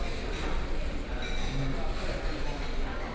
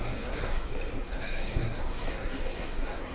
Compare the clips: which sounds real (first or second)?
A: first